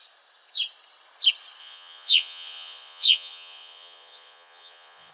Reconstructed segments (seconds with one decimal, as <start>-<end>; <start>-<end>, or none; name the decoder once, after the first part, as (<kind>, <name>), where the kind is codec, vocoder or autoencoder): 1.6-5.1 (vocoder, Vocos)